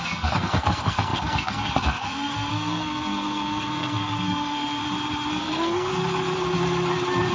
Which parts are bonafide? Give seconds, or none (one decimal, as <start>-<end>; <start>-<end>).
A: 4.8-5.4; 5.9-7.3